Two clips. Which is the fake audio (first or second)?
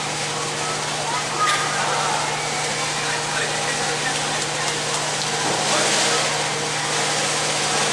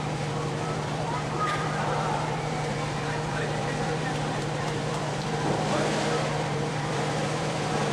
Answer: second